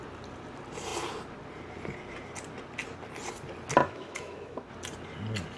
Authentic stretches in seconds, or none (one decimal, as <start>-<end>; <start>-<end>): 0.0-3.8; 4.7-5.6